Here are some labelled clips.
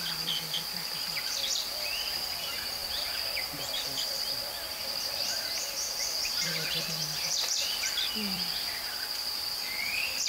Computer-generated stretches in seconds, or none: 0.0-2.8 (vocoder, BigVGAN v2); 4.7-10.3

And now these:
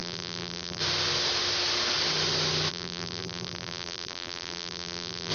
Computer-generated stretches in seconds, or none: 0.0-0.8 (vocoder, BigVGAN v2); 2.7-5.3

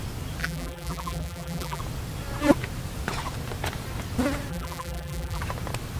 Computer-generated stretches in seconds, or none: 0.4-1.8 (vocoder, BigVGAN v2); 4.5-5.4

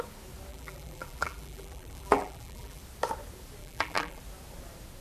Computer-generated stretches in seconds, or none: 0.5-2.8 (vocoder, BigVGAN v2); 3.6-4.2

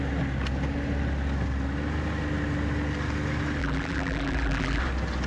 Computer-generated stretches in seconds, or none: 3.6-4.8 (vocoder, BigVGAN v2)

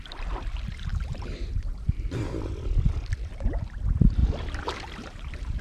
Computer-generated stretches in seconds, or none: 0.9-2.5 (vocoder, BigVGAN v2); 4.2-5.6